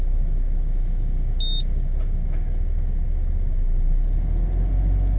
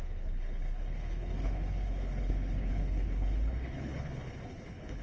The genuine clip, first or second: first